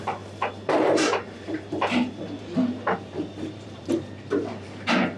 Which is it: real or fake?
fake